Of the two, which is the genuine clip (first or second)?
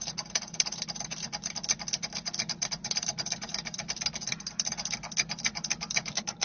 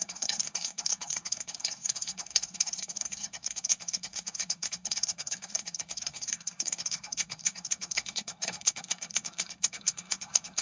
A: first